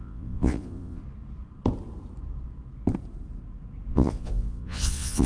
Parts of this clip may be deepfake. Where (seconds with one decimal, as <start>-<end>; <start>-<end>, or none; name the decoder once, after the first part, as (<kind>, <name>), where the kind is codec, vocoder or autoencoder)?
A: 0.0-1.0 (vocoder, Vocos); 3.9-5.3